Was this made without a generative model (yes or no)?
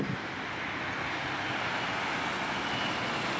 yes